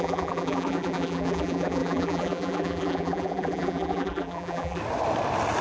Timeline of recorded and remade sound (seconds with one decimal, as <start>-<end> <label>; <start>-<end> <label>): 0.0-4.8 remade; 4.8-5.6 recorded